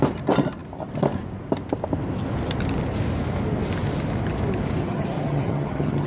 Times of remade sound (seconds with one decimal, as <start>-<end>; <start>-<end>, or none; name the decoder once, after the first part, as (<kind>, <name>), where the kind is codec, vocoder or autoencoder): 4.8-6.1 (vocoder, HiFi-GAN)